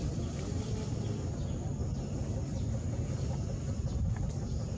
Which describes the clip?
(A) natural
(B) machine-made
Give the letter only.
A